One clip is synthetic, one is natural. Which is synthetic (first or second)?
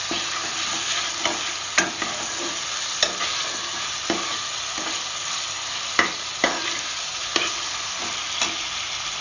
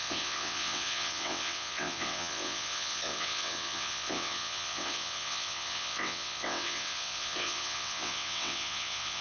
second